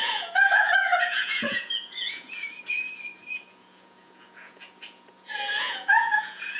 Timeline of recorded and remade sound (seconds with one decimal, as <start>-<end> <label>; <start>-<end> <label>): 0.0-6.6 remade